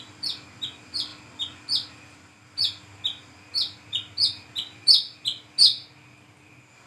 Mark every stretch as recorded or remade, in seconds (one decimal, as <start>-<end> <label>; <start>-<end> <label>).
0.0-6.9 recorded

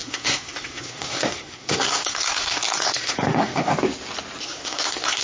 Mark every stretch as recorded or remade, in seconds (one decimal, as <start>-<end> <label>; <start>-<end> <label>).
0.0-3.7 remade; 3.7-4.4 recorded; 4.4-5.2 remade

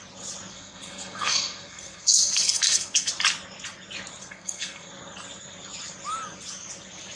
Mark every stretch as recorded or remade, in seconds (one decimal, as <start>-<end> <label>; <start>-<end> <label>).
0.0-0.5 recorded; 0.5-3.1 remade; 3.1-4.2 recorded; 4.2-4.9 remade; 4.9-7.2 recorded

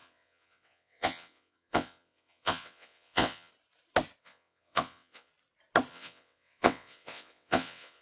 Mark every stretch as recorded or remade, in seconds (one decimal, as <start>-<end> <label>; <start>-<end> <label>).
0.0-3.5 remade; 3.5-4.2 recorded; 4.2-5.3 remade; 5.3-5.9 recorded; 5.9-8.0 remade

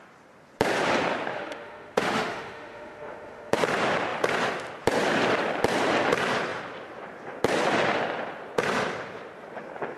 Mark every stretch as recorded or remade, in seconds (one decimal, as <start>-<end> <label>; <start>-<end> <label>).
0.0-1.3 recorded; 1.3-3.6 remade; 3.6-10.0 recorded

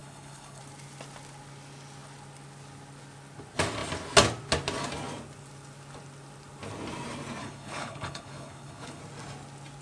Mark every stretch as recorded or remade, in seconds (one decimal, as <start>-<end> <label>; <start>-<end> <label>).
0.0-0.6 remade; 0.6-7.4 recorded; 7.4-9.0 remade; 9.0-9.8 recorded